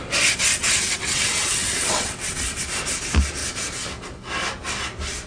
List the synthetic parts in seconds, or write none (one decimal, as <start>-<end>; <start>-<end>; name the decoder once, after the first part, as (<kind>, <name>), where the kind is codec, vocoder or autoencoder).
0.5-2.6 (vocoder, WaveNeXt)